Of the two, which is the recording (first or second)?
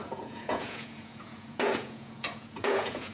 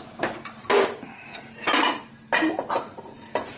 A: second